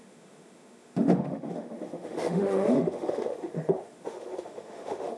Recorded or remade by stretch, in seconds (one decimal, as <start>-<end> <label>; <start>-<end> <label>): 0.0-5.2 remade